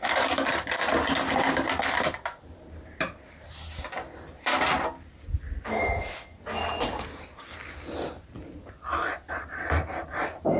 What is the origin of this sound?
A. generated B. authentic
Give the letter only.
B